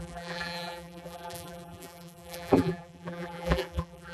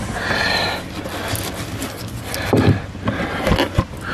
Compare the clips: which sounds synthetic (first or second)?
first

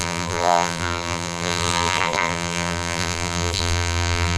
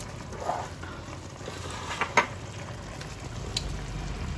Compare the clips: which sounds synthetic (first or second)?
first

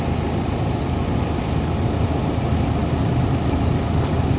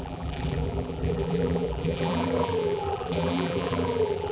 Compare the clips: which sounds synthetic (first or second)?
second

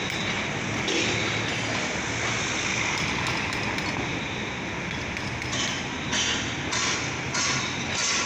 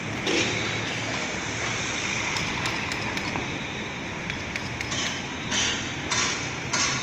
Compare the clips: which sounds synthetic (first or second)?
second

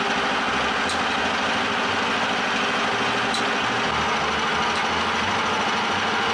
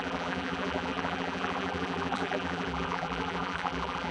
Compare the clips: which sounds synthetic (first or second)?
second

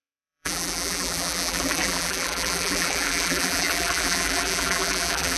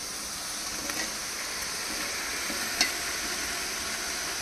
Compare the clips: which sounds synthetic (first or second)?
first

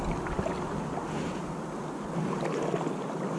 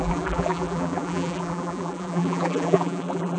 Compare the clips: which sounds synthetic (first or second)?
second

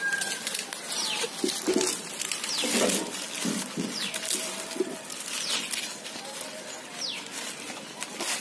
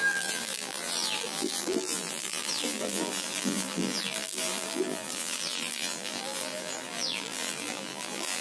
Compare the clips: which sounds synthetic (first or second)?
second